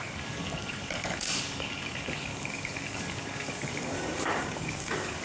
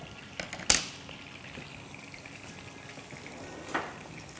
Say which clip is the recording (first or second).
second